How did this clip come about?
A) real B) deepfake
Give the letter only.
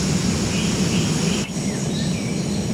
A